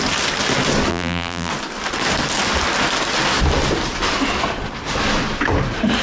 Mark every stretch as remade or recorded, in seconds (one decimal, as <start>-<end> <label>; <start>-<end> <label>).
0.0-0.9 recorded; 0.9-1.5 remade; 1.5-6.0 recorded